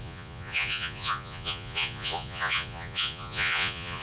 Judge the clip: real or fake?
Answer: fake